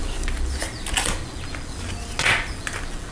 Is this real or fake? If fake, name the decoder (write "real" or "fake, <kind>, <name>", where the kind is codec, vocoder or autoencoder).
real